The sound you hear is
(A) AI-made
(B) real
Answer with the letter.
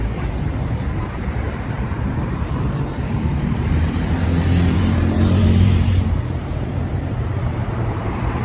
A